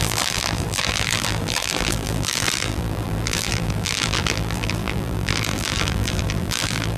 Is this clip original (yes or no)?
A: no